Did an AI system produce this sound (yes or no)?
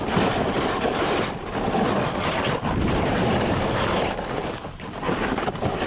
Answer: no